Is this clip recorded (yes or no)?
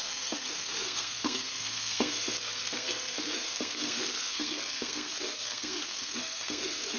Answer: no